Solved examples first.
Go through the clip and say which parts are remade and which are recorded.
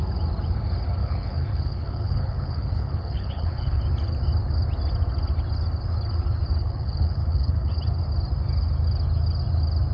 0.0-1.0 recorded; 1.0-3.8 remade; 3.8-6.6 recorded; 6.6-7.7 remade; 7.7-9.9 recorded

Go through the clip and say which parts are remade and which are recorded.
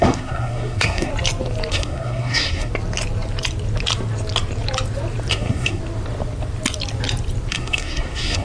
0.0-1.1 remade; 1.1-1.7 recorded; 1.7-2.7 remade; 2.7-5.3 recorded; 5.3-5.8 remade; 5.8-7.5 recorded; 7.5-8.4 remade